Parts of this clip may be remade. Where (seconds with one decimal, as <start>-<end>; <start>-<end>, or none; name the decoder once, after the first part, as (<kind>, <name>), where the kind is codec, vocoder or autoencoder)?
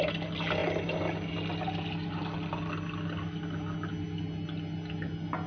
none